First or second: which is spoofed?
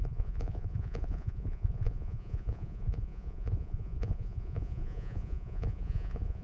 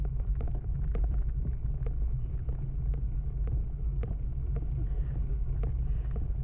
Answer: first